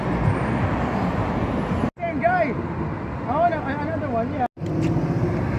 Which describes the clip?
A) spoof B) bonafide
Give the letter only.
B